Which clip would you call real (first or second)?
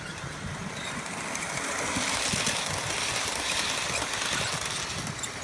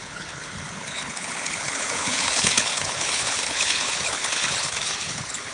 first